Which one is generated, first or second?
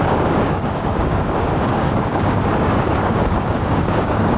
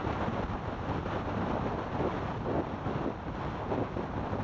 first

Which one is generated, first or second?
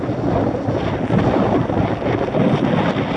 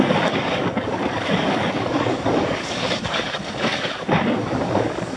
second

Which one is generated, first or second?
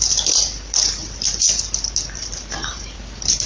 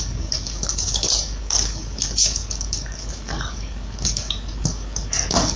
second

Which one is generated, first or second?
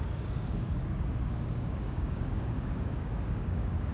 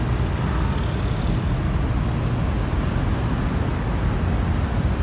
first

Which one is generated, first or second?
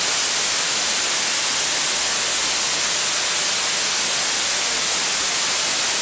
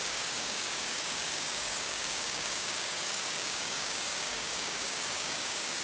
second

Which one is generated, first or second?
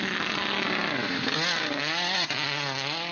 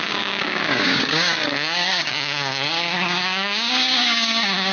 second